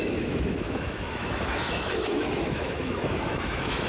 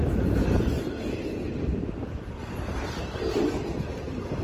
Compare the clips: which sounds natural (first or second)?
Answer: second